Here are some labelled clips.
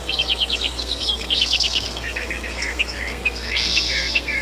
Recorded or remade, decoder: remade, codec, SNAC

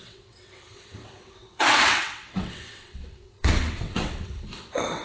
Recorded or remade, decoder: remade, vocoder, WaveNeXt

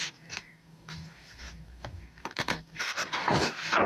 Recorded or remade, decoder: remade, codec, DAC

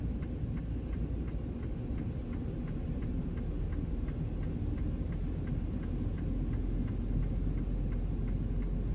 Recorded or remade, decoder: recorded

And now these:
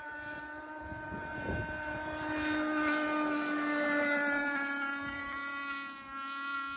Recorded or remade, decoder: recorded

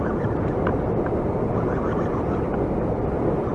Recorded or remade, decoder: recorded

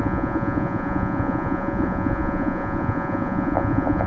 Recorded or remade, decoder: remade, vocoder, Vocos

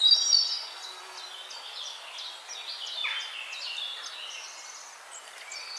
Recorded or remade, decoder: recorded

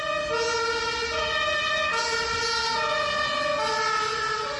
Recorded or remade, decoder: recorded